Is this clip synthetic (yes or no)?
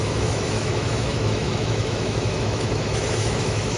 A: yes